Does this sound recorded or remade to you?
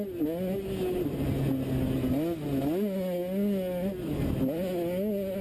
recorded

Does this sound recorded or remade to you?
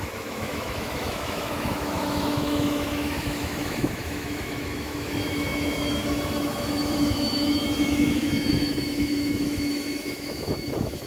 remade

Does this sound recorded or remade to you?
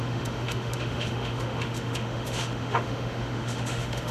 remade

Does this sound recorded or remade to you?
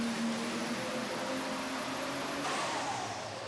recorded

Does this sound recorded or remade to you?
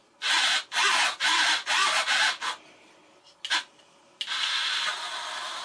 recorded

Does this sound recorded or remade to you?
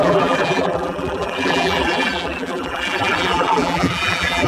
remade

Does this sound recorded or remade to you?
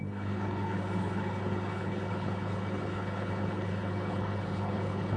remade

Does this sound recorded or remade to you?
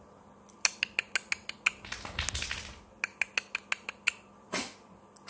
recorded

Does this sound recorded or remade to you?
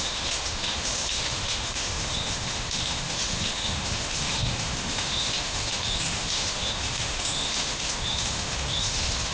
remade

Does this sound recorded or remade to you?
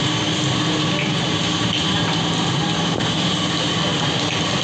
recorded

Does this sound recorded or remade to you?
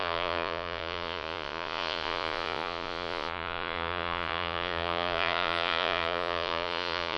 remade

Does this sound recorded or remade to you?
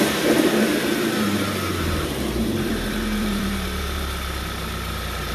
remade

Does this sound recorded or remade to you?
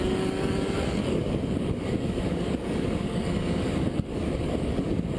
remade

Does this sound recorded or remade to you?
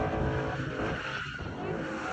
recorded